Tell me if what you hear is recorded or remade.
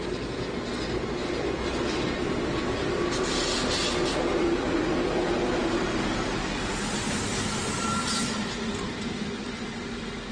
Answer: recorded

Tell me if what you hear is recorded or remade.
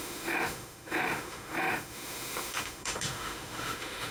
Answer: remade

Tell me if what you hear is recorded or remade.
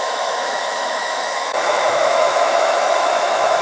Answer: remade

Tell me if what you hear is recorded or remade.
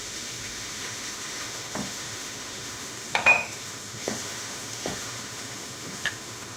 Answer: remade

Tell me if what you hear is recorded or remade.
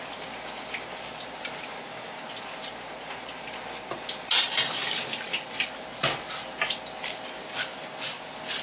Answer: recorded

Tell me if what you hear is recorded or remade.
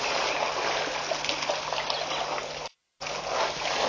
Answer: recorded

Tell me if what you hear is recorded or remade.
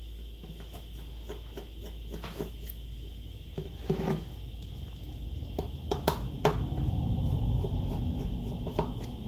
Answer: remade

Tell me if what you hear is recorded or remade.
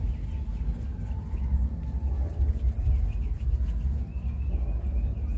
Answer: recorded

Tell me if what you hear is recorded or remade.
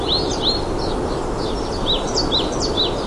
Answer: recorded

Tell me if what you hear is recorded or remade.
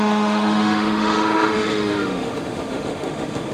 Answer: remade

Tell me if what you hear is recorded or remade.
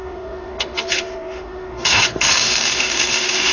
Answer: remade